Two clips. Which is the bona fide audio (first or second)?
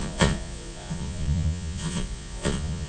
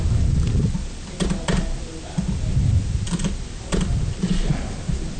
second